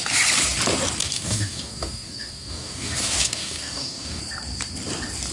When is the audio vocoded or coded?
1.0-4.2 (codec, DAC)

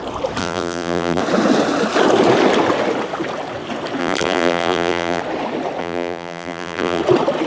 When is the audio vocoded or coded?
0.4-1.2 (vocoder, BigVGAN v2); 4.0-5.2; 5.8-7.0

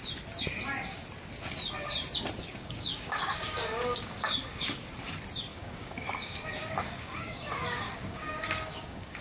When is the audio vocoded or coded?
2.4-4.9 (codec, DAC); 5.5-9.2

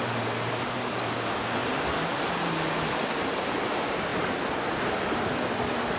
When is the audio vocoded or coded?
none

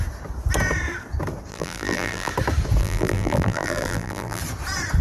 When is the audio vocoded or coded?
1.5-2.3 (vocoder, BigVGAN v2); 2.8-4.4

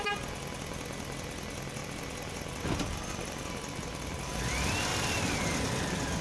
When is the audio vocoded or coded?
1.8-4.2 (vocoder, BigVGAN v2); 4.9-6.2

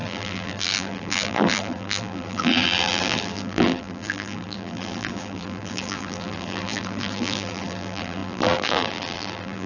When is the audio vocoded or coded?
0.0-9.7 (vocoder, BigVGAN v2)

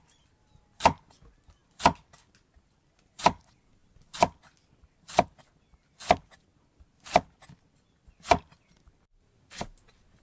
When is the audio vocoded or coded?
none